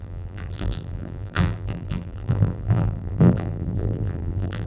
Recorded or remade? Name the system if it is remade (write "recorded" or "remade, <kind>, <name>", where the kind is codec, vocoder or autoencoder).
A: remade, vocoder, BigVGAN v2